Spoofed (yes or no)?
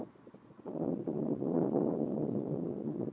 yes